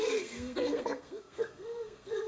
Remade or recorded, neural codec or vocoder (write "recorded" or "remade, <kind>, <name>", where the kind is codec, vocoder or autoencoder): remade, codec, SNAC